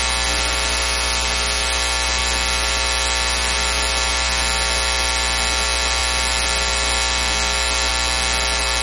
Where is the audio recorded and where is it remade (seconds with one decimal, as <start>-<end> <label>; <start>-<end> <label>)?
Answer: 0.0-8.8 recorded

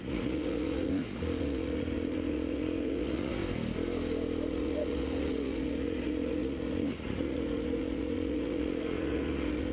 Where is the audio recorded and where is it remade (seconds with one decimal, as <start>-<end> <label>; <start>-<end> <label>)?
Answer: 0.0-3.4 remade; 3.4-4.5 recorded; 4.5-9.7 remade

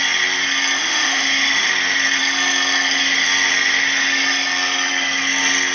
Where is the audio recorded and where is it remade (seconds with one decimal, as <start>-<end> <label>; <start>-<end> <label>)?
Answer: 0.0-0.8 recorded; 0.8-1.7 remade; 1.7-5.7 recorded

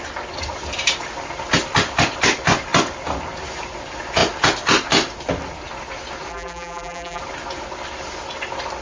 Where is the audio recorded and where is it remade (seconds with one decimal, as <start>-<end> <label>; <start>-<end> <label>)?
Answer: 0.0-6.3 recorded; 6.3-7.2 remade; 7.2-8.8 recorded

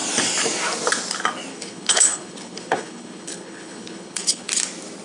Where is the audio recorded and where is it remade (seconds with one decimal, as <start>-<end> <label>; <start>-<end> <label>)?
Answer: 0.0-1.5 recorded; 1.5-4.5 remade; 4.5-5.0 recorded

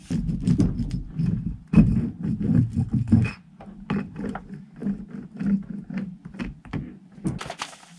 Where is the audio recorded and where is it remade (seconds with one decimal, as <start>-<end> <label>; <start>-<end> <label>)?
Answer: 0.0-8.0 recorded

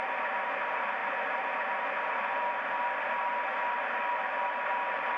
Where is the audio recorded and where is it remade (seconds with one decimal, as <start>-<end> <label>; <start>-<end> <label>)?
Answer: 0.0-5.2 recorded

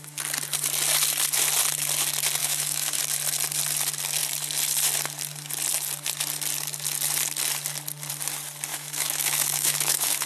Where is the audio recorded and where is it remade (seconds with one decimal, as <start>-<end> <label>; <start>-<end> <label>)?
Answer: 0.0-2.4 recorded; 2.4-3.0 remade; 3.0-8.7 recorded; 8.7-10.3 remade